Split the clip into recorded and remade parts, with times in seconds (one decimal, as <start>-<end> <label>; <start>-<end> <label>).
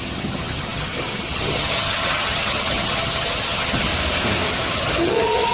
0.0-3.9 remade; 3.9-4.6 recorded; 4.6-5.5 remade